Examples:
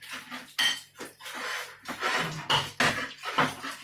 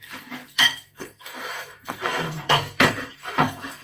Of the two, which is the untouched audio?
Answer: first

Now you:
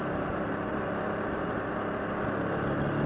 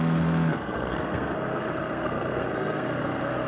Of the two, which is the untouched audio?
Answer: first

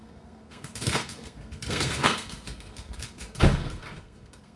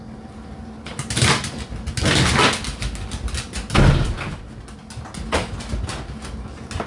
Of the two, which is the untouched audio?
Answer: second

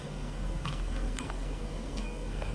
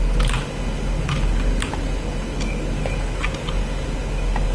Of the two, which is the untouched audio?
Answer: second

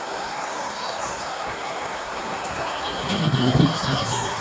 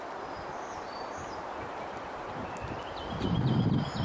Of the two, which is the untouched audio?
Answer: second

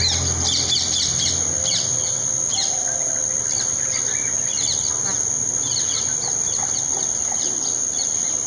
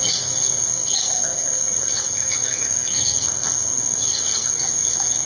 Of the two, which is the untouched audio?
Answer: first